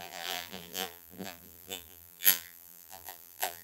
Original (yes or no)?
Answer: no